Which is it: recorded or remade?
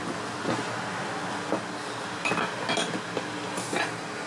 recorded